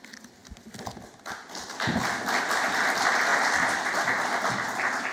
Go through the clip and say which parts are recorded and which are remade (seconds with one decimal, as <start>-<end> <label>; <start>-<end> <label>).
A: 0.0-5.1 recorded